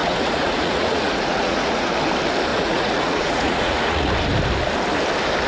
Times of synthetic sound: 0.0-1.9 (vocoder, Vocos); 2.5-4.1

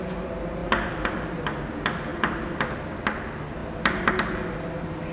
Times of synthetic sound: 0.6-1.4 (vocoder, BigVGAN v2); 2.1-3.0; 3.6-4.1

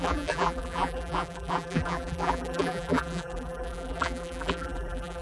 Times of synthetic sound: 0.0-5.2 (vocoder, BigVGAN v2)

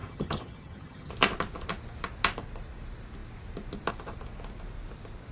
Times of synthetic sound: 0.0-1.1 (vocoder, HiFi-GAN)

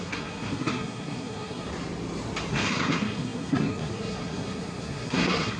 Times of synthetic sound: 0.0-1.7 (codec, SNAC); 2.5-5.6